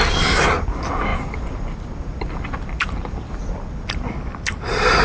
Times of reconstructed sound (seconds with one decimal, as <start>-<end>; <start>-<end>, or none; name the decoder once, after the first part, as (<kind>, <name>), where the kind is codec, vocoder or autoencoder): 0.0-1.1 (vocoder, BigVGAN v2); 3.9-5.0